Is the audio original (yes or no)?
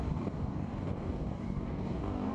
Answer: no